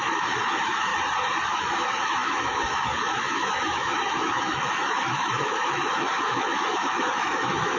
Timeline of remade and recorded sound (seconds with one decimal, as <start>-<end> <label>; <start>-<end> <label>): 0.0-0.9 remade; 0.9-1.5 recorded; 1.5-7.8 remade

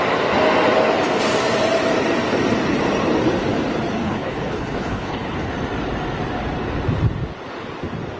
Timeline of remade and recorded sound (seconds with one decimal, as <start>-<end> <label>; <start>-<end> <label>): 0.0-4.0 recorded; 4.0-5.5 remade; 5.5-8.2 recorded

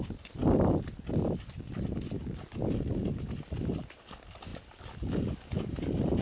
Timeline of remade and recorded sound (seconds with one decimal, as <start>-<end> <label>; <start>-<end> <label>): 0.0-6.2 recorded